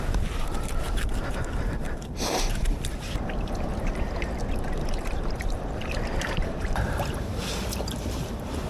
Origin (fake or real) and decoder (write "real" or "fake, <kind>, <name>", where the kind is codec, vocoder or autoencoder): fake, vocoder, BigVGAN v2